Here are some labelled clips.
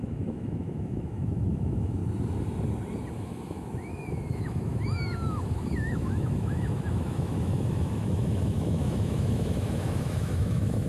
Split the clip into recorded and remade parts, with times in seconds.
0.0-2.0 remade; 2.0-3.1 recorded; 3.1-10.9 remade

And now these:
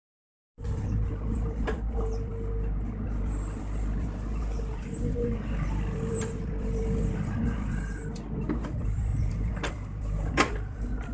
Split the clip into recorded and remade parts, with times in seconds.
0.0-2.3 remade; 2.3-6.4 recorded; 6.4-9.1 remade; 9.1-9.7 recorded; 9.7-11.1 remade

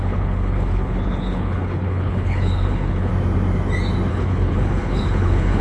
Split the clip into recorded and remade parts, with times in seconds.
0.0-3.1 remade; 3.1-4.1 recorded; 4.1-5.6 remade